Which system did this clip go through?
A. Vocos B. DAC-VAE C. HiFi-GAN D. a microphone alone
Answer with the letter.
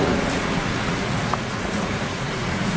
A